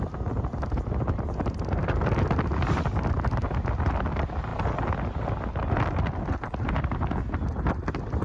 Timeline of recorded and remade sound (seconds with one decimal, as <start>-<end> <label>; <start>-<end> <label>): 0.0-8.2 recorded